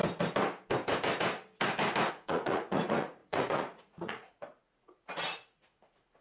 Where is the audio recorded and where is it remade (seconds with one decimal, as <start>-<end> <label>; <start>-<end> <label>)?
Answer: 0.0-2.1 recorded; 2.1-6.2 remade